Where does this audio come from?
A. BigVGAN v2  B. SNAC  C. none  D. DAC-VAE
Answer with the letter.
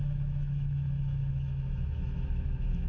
D